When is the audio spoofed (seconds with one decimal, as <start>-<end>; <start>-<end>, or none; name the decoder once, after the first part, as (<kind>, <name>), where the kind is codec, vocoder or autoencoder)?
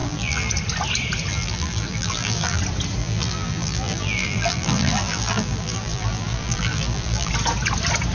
0.0-0.5 (vocoder, BigVGAN v2); 1.3-2.6; 3.0-7.3